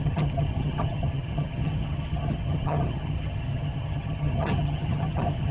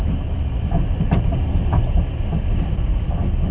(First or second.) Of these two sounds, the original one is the second